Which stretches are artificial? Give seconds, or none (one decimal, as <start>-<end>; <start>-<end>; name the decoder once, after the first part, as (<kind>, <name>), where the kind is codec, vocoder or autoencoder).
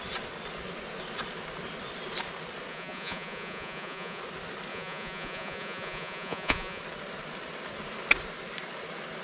2.7-4.2 (vocoder, Vocos); 4.7-6.8